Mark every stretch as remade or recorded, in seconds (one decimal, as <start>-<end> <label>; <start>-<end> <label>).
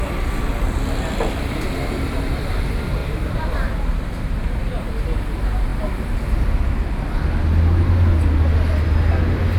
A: 0.0-3.0 recorded; 3.0-4.4 remade; 4.4-9.6 recorded